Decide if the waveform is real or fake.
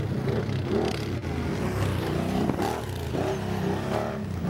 real